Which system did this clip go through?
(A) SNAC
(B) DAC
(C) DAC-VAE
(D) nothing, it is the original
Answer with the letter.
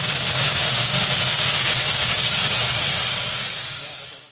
B